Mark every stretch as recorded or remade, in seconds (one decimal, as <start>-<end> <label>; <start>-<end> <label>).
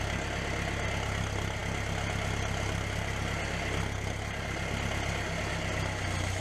0.0-6.4 recorded